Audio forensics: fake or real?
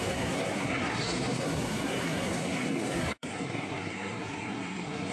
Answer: fake